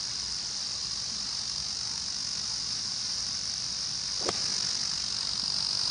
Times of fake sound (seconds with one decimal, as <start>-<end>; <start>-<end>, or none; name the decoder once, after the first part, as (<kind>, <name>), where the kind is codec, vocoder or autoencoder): none